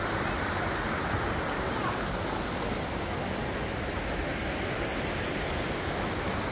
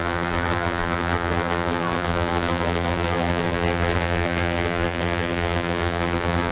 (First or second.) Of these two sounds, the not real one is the second